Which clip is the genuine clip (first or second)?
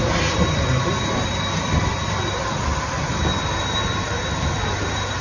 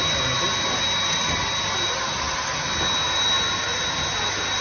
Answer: second